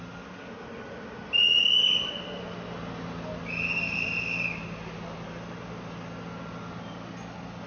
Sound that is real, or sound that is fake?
real